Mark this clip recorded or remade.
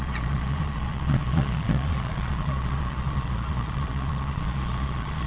remade